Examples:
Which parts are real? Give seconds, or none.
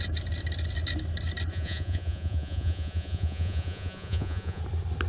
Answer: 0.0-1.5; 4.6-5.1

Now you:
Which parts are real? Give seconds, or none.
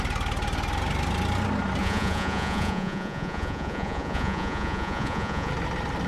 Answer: 0.0-1.8; 5.5-6.1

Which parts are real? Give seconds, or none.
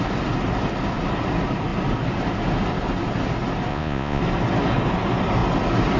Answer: 0.0-3.7; 4.2-6.0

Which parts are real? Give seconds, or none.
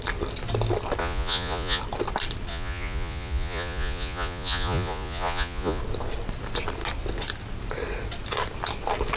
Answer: 0.0-1.0; 1.8-2.5; 5.8-9.2